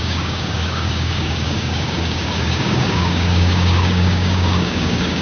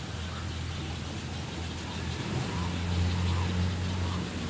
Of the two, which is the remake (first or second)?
first